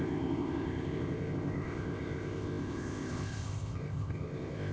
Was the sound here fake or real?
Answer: fake